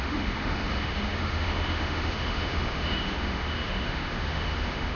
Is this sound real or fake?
fake